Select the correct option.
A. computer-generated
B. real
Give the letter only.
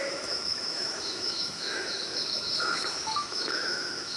A